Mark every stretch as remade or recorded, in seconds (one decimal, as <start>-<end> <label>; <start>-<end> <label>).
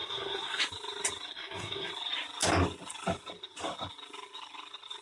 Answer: 0.0-0.6 remade; 0.6-1.3 recorded; 1.3-1.9 remade; 1.9-5.0 recorded